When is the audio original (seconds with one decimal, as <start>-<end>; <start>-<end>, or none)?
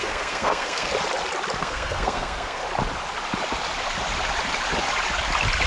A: 0.9-1.6; 2.6-5.7